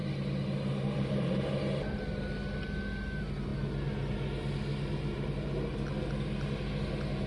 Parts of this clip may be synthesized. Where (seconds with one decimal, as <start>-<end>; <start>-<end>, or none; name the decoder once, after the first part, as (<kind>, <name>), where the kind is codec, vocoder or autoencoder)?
none